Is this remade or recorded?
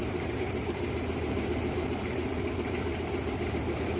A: remade